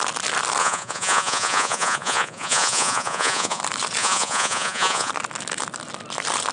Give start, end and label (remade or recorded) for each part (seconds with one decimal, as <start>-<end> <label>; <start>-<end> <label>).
0.0-0.6 recorded; 0.6-3.6 remade; 3.6-4.0 recorded; 4.0-5.1 remade; 5.1-6.5 recorded